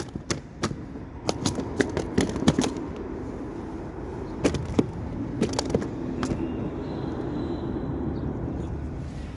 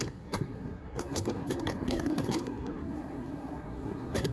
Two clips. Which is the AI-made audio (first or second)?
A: second